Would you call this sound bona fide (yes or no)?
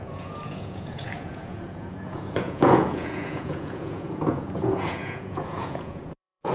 no